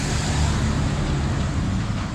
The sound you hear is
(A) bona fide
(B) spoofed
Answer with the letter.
A